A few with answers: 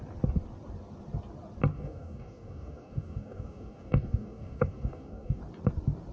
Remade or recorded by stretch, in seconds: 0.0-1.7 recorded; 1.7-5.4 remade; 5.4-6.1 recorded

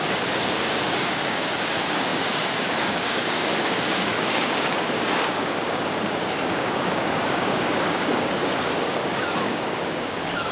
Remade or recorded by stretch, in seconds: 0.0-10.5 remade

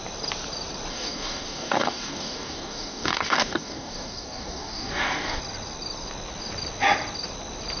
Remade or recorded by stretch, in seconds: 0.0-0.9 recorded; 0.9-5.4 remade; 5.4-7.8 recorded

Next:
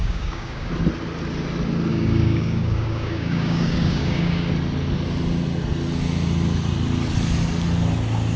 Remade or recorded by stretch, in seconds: 0.0-0.7 remade; 0.7-1.9 recorded; 1.9-4.5 remade; 4.5-8.4 recorded